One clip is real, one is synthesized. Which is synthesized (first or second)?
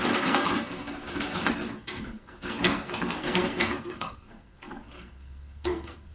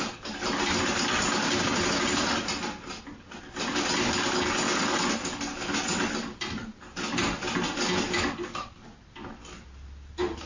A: first